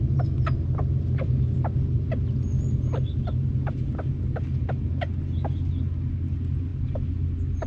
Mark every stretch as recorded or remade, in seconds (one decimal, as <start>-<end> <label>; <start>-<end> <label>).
0.0-7.7 recorded